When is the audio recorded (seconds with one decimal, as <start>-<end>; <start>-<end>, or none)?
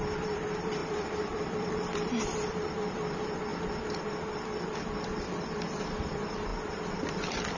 3.5-4.8; 6.5-7.1